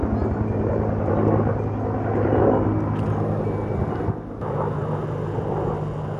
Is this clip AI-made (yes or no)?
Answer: no